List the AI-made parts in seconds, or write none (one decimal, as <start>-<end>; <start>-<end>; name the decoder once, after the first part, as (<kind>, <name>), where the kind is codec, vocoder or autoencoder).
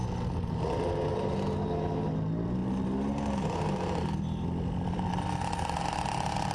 none